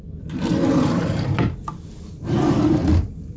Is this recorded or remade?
recorded